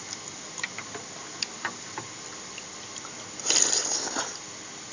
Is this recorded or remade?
recorded